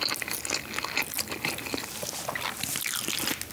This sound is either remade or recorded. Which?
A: recorded